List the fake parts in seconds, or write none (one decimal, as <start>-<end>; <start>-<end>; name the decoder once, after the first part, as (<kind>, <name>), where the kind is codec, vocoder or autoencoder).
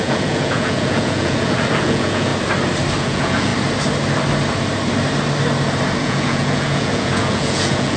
0.0-2.3 (vocoder, Vocos); 3.0-3.5; 6.0-8.0